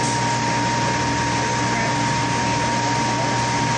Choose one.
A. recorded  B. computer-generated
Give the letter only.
A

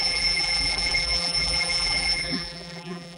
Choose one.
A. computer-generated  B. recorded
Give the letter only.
A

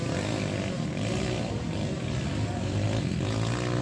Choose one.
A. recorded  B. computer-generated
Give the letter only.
A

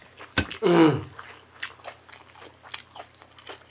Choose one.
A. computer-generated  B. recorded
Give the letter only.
B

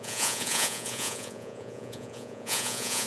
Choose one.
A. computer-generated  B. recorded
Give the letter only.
A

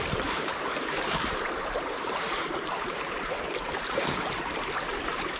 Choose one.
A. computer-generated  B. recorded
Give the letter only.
A